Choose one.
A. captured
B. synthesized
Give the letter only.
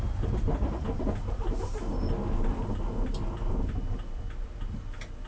B